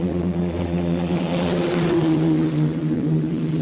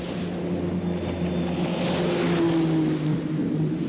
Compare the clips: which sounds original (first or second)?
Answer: second